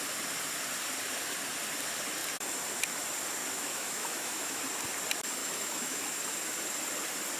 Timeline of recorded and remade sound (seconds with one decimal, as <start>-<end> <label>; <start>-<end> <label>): 0.0-3.4 recorded; 3.4-4.6 remade; 4.6-5.4 recorded; 5.4-6.0 remade; 6.0-7.4 recorded